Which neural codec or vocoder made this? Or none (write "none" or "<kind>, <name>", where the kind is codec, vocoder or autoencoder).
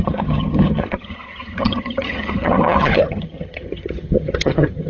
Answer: vocoder, HiFi-GAN